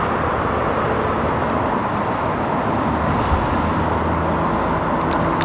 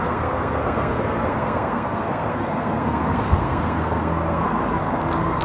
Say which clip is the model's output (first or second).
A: second